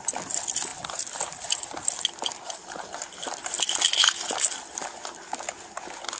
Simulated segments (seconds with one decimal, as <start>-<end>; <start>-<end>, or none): none